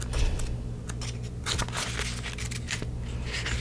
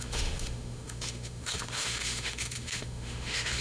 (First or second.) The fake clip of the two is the second